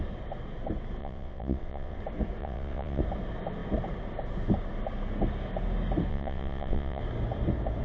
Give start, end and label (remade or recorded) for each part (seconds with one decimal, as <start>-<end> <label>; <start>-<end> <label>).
0.0-1.0 recorded; 1.0-2.0 remade; 2.0-2.4 recorded; 2.4-3.0 remade; 3.0-6.1 recorded; 6.1-7.0 remade; 7.0-7.8 recorded